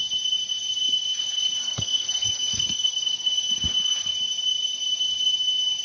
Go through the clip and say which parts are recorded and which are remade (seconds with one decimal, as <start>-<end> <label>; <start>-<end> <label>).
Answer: 0.0-1.6 recorded; 1.6-3.3 remade; 3.3-5.8 recorded